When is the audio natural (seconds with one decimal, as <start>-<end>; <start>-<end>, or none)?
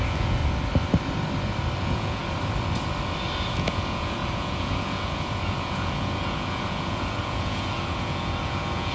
0.4-1.8; 2.2-3.5